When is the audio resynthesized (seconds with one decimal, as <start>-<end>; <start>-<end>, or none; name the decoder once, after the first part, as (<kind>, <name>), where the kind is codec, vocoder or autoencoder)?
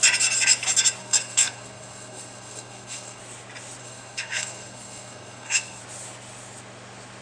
1.0-3.2 (codec, SNAC); 3.8-5.8